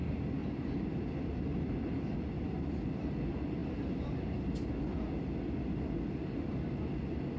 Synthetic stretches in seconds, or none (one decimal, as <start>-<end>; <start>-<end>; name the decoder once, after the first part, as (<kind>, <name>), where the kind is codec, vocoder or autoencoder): 0.4-1.4 (vocoder, BigVGAN v2); 3.6-4.7